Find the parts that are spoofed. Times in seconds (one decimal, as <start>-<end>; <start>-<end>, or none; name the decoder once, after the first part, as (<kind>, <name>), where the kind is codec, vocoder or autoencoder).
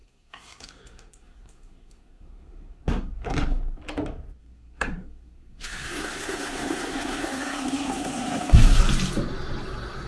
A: 0.0-3.8 (codec, SNAC); 4.4-8.8